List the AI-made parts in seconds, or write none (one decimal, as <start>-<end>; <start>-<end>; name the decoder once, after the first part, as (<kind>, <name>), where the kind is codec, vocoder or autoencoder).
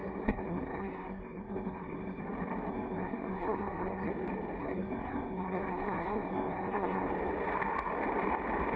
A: 0.0-2.2 (codec, SNAC); 2.7-4.1; 4.6-7.1